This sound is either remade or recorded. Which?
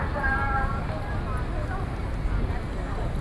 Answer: recorded